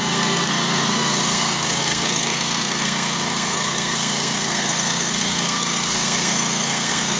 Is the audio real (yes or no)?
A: no